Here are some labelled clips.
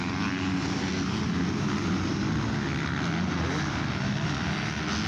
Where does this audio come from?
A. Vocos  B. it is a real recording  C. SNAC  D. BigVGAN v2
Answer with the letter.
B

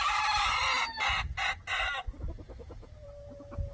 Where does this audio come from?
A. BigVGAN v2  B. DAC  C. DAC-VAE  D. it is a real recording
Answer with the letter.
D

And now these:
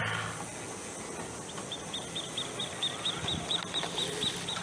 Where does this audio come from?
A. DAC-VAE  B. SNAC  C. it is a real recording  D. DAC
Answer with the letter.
C